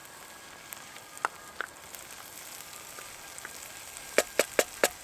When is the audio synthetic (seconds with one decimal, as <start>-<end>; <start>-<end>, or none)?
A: none